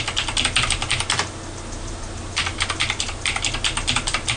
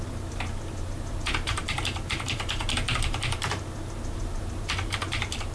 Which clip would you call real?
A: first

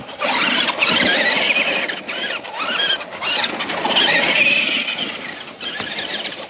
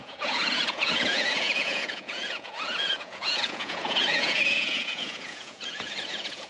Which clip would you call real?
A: first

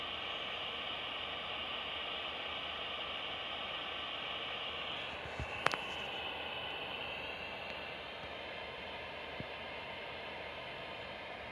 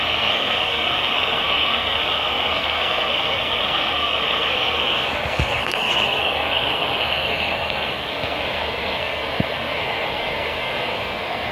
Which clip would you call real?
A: first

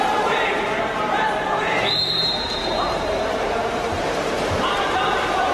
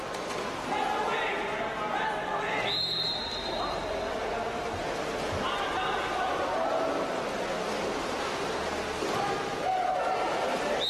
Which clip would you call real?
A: second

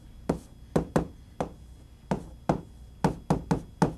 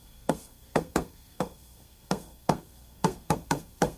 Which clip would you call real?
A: first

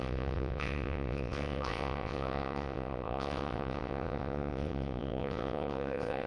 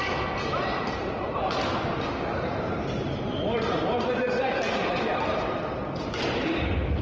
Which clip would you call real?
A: second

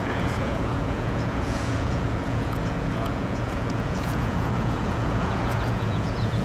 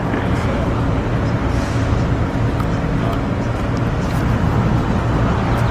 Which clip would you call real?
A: second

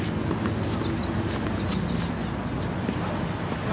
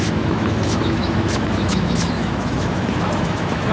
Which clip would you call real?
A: first